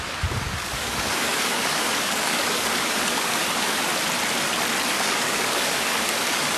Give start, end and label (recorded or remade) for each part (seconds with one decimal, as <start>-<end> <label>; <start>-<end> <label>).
0.0-3.9 remade; 3.9-4.9 recorded; 4.9-6.6 remade